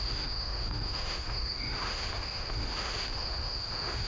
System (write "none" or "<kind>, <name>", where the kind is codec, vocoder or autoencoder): autoencoder, DAC-VAE